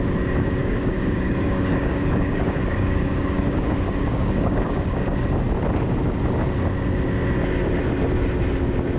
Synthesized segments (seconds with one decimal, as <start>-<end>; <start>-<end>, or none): 0.6-5.1